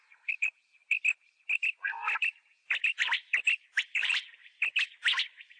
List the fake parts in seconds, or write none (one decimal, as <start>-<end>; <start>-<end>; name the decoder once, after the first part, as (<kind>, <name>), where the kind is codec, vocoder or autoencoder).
0.0-0.8 (vocoder, BigVGAN v2); 3.8-4.4

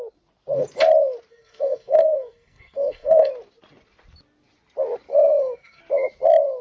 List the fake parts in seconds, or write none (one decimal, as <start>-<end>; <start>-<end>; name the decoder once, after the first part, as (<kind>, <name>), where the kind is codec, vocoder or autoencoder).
1.3-3.3 (codec, SNAC); 5.1-5.8

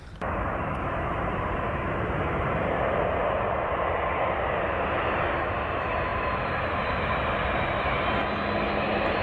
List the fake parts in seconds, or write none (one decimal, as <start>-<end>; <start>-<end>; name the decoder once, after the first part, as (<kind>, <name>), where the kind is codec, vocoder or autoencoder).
none

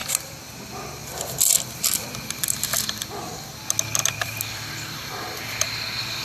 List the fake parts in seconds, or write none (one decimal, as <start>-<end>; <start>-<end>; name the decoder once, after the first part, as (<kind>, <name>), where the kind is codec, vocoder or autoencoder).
0.0-0.6 (vocoder, BigVGAN v2); 1.0-3.1; 4.0-5.4

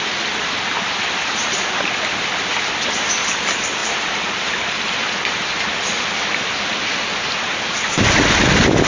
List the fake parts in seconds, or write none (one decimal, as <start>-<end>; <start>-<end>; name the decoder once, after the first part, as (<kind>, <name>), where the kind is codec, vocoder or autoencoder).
3.8-4.3 (vocoder, BigVGAN v2)

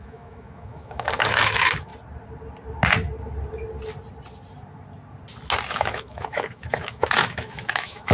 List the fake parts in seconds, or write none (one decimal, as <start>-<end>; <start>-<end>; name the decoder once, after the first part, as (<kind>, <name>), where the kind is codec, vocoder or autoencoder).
0.0-1.9 (autoencoder, DAC-VAE); 5.7-8.1

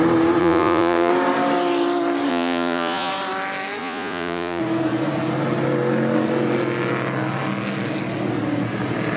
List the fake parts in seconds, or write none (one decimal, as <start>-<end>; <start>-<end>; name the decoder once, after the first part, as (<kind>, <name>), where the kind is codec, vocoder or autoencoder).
0.4-1.1 (vocoder, Vocos); 2.3-3.1; 3.8-4.6